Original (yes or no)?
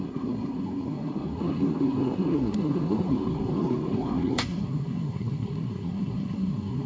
no